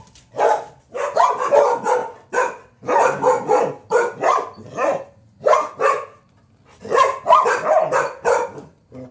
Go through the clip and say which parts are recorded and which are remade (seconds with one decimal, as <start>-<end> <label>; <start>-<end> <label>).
0.0-9.1 recorded